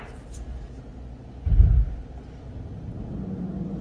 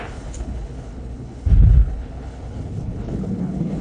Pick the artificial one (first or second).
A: second